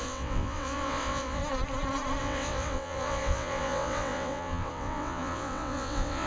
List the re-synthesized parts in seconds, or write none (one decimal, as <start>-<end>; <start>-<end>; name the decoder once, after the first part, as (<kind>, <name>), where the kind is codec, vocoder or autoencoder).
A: 0.0-1.4 (vocoder, WaveNeXt); 2.2-6.3